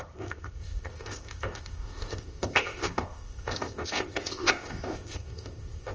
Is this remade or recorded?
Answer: remade